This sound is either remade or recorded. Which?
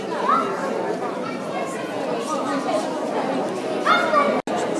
recorded